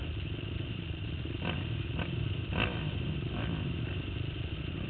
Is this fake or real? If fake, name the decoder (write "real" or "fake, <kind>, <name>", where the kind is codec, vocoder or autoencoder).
real